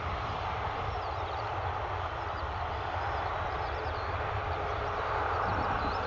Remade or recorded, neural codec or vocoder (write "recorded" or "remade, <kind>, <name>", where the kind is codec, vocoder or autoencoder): recorded